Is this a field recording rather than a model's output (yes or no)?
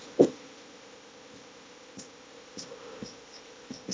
no